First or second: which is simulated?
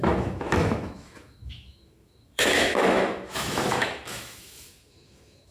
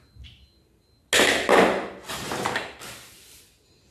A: first